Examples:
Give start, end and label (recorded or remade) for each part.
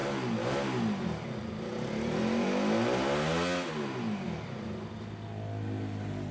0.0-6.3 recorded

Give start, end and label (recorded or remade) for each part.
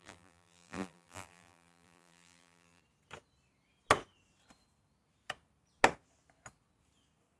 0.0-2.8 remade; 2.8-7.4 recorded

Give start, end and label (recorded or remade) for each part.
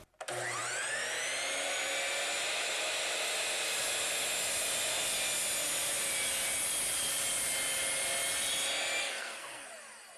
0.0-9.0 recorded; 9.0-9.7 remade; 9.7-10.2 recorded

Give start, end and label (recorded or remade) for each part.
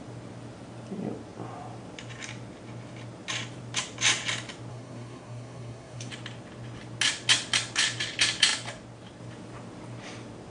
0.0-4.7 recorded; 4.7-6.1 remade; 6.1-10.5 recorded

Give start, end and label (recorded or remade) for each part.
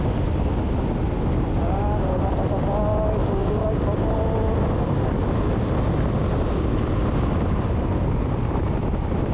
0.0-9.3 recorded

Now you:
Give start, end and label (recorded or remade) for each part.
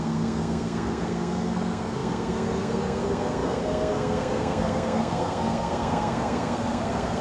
0.0-7.2 remade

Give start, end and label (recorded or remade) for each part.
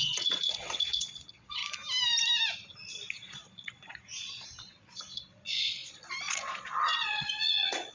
0.0-1.6 remade; 1.6-3.1 recorded; 3.1-7.9 remade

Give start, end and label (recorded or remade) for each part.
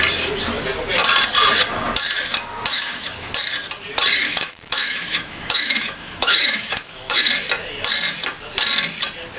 0.0-2.7 recorded; 2.7-3.3 remade; 3.3-4.2 recorded; 4.2-7.3 remade; 7.3-9.4 recorded